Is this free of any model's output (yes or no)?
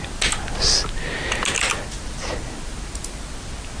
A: yes